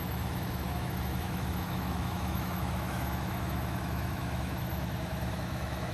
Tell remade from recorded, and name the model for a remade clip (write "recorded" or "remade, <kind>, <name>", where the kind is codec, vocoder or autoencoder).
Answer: remade, autoencoder, DAC-VAE